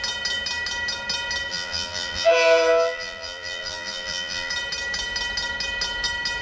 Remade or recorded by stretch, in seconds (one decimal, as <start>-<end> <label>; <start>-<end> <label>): 0.0-1.5 recorded; 1.5-4.5 remade; 4.5-6.4 recorded